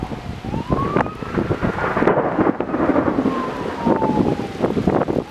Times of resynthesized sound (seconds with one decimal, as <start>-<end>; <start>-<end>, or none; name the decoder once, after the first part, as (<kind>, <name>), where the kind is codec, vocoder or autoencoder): 2.9-3.6 (vocoder, BigVGAN v2); 4.3-5.3